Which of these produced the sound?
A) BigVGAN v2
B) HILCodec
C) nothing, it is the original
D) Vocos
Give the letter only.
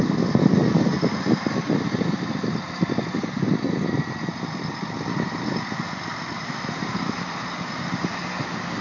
C